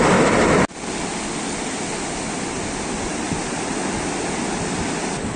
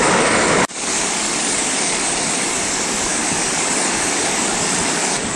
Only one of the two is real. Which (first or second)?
first